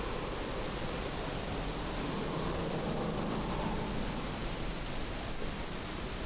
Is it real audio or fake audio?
real